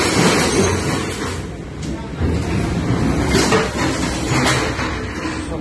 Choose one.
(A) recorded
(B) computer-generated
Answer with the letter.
A